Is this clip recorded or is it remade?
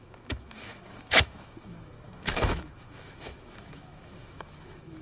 remade